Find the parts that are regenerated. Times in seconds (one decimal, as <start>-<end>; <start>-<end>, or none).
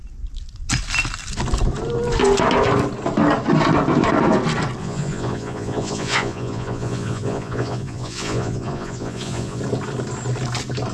4.8-9.6